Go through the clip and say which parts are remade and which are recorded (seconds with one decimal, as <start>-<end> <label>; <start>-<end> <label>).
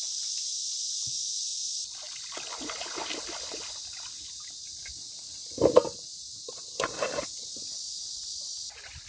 0.0-9.1 recorded